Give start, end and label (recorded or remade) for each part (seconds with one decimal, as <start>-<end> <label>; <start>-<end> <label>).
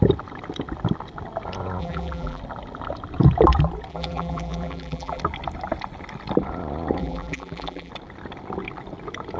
0.0-1.8 recorded; 1.8-2.4 remade; 2.4-3.9 recorded; 3.9-5.2 remade; 5.2-7.0 recorded; 7.0-7.9 remade; 7.9-9.4 recorded